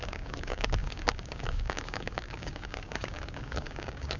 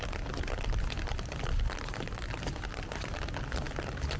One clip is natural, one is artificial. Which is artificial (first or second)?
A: first